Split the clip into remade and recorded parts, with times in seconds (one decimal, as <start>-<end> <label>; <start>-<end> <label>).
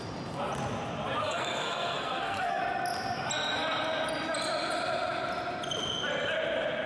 0.0-1.2 recorded; 1.2-2.6 remade; 2.6-6.9 recorded